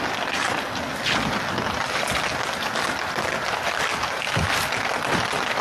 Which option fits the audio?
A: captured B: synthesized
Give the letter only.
A